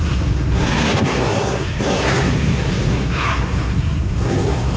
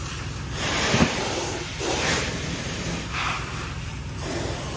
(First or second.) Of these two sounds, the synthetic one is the first